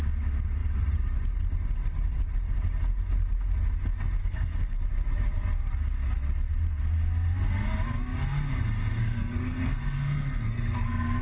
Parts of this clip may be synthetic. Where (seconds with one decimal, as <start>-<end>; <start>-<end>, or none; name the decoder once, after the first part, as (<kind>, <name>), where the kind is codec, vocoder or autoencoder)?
4.2-4.8 (codec, SNAC); 9.0-11.2